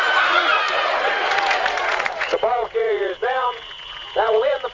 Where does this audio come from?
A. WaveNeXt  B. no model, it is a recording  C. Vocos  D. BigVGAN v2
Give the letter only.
C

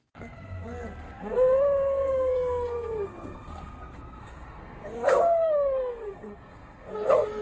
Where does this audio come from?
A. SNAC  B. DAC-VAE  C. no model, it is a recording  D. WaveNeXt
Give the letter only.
A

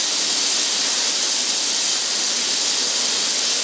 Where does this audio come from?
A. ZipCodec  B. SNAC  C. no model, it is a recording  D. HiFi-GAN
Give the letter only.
C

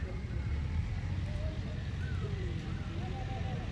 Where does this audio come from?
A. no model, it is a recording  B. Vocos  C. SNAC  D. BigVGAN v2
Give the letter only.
A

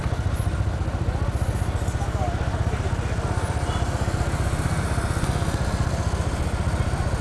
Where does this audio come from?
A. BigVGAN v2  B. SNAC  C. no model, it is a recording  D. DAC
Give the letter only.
C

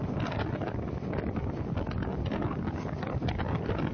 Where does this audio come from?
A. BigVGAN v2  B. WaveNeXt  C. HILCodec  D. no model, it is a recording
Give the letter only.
D